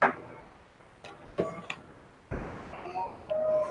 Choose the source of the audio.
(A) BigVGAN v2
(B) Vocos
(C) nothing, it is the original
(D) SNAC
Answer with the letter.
C